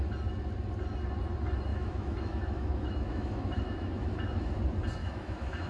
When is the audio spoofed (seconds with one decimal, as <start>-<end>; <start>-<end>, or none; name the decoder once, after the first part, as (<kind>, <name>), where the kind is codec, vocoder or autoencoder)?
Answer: 1.7-4.5 (autoencoder, DAC-VAE); 5.0-5.7